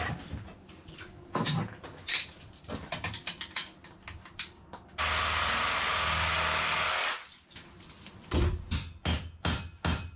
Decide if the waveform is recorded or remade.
recorded